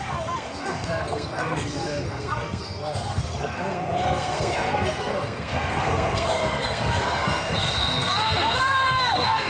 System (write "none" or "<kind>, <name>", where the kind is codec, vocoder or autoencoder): codec, SNAC